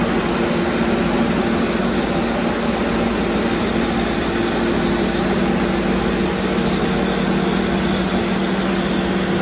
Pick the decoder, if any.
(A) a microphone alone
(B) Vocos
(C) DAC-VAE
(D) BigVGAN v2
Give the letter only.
A